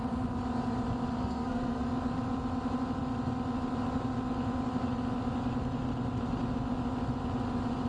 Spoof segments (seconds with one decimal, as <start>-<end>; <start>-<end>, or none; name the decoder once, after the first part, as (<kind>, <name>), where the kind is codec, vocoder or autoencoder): 1.2-1.9 (codec, SNAC)